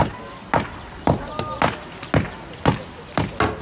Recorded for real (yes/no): yes